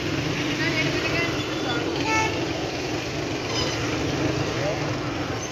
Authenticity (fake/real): real